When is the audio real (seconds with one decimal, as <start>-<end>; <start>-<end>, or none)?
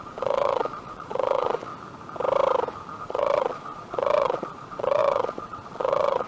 1.7-3.0